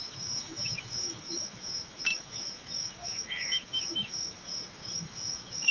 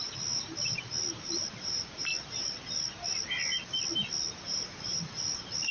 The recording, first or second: second